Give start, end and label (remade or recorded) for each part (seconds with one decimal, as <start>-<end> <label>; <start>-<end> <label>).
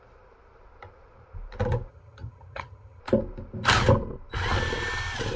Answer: 0.0-1.9 recorded; 1.9-3.0 remade; 3.0-5.4 recorded